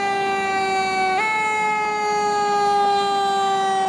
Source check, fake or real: real